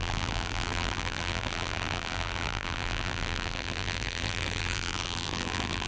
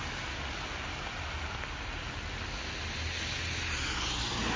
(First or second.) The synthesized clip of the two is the first